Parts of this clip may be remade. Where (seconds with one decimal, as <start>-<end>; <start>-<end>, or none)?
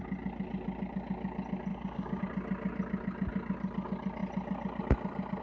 1.7-2.2